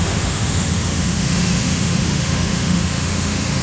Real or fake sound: fake